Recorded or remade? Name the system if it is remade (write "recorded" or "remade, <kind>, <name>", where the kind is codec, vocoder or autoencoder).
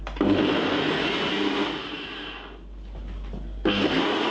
recorded